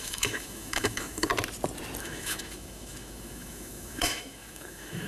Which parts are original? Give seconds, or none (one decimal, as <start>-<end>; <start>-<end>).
1.3-2.0